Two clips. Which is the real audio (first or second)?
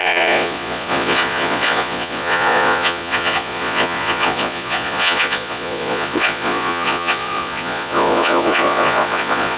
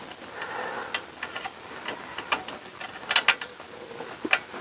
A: second